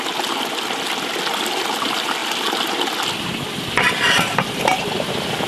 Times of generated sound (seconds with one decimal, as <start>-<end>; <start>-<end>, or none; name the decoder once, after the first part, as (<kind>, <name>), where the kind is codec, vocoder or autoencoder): none